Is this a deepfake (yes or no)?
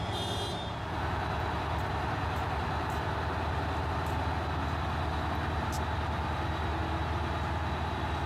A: no